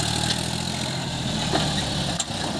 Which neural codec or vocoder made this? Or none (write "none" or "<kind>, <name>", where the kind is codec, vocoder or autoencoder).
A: none